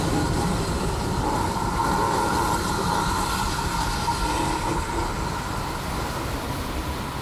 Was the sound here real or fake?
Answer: real